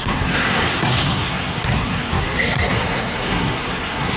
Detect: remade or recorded remade